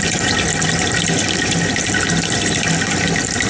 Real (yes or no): no